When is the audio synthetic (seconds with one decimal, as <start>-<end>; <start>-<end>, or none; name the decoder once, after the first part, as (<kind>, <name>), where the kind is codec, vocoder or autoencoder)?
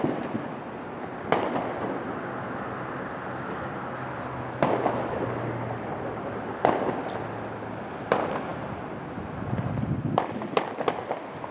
none